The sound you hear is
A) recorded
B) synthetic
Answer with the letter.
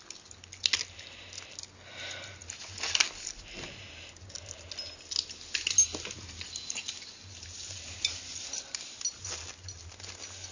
A